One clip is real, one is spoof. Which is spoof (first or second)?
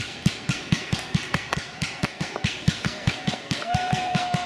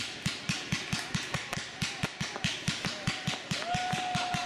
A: first